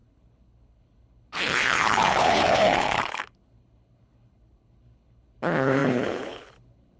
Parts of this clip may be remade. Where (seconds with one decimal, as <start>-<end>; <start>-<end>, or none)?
0.0-7.0